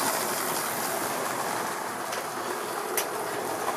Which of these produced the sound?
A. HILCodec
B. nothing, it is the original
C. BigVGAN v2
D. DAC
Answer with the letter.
C